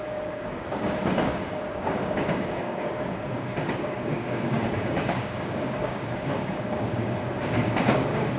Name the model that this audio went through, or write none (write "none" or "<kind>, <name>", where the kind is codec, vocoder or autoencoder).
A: codec, DAC